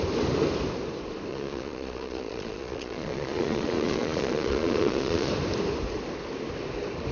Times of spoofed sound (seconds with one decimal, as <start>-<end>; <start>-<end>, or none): 1.3-5.3